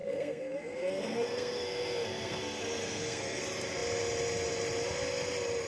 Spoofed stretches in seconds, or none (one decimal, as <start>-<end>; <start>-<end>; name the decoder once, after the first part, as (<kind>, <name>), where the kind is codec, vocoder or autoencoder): 0.0-3.4 (codec, SNAC)